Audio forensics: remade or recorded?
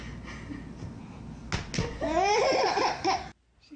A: recorded